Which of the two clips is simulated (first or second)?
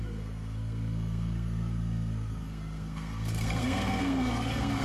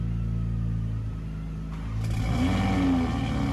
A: first